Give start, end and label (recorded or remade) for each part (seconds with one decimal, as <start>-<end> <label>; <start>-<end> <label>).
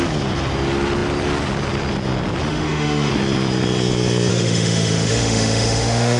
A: 0.0-2.5 recorded; 2.5-3.1 remade; 3.1-4.3 recorded; 4.3-6.2 remade